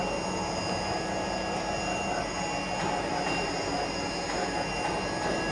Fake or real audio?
real